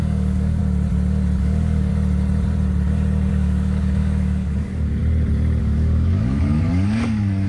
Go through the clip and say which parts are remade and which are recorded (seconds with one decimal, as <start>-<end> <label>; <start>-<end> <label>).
0.0-0.6 remade; 0.6-1.4 recorded; 1.4-1.9 remade; 1.9-3.3 recorded; 3.3-5.0 remade; 5.0-5.6 recorded; 5.6-7.5 remade